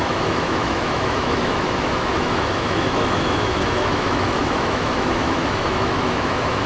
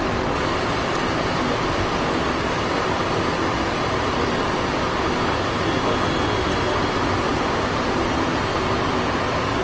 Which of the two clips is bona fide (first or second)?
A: second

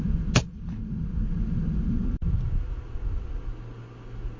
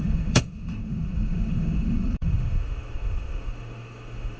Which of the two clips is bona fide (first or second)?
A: first